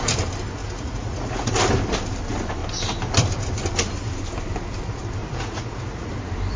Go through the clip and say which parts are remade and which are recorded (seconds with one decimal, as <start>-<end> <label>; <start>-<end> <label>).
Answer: 0.0-0.6 recorded; 0.6-1.5 remade; 1.5-5.2 recorded; 5.2-6.1 remade; 6.1-6.6 recorded